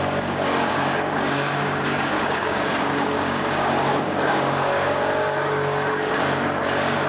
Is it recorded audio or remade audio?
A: remade